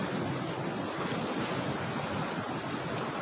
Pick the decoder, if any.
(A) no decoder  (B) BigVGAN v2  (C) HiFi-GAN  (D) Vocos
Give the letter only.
A